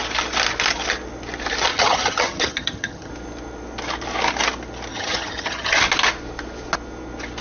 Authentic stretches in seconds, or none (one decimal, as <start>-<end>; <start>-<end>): 0.0-1.7; 3.1-4.9; 5.8-7.4